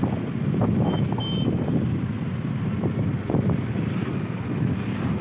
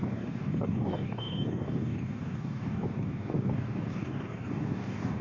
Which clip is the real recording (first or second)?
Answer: first